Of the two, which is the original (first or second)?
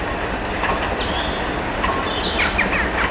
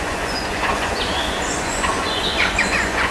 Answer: first